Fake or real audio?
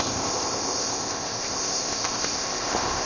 fake